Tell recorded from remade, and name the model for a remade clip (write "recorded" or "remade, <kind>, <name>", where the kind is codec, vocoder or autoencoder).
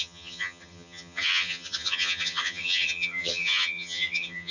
remade, vocoder, HiFi-GAN